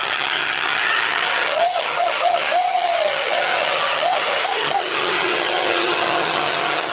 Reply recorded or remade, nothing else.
remade